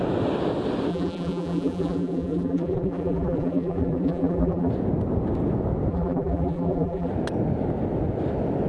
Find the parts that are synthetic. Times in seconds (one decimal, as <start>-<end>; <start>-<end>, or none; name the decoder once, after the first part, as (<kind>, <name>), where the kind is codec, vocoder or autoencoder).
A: 0.9-4.7 (vocoder, BigVGAN v2); 5.9-7.1